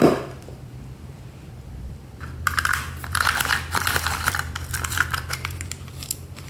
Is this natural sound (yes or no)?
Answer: no